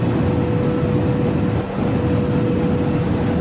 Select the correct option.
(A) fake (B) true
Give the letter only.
B